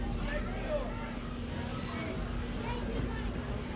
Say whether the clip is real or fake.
real